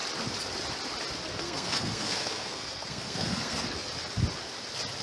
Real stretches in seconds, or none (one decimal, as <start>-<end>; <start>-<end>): 0.0-1.3; 3.9-5.0